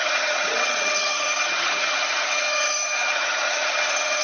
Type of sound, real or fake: fake